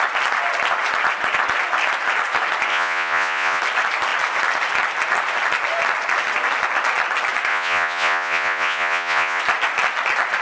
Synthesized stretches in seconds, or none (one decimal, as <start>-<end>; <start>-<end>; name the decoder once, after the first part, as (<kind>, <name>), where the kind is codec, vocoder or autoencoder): 2.7-3.6 (vocoder, Vocos); 7.5-9.4